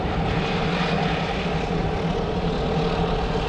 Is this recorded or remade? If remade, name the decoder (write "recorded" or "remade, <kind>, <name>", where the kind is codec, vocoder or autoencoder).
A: recorded